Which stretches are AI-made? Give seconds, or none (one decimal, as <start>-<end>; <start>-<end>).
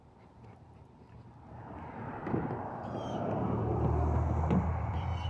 0.0-2.2; 2.8-3.6; 4.6-5.3